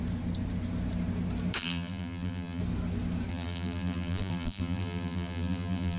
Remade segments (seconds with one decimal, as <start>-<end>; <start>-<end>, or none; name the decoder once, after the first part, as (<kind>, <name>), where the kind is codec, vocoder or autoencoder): 1.6-2.6 (vocoder, BigVGAN v2); 3.3-6.0